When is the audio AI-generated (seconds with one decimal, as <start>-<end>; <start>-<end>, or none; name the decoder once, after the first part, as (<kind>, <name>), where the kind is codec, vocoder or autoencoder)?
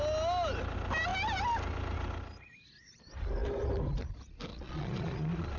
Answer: 4.5-5.6 (vocoder, Vocos)